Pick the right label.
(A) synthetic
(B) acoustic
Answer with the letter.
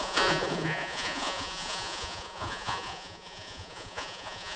A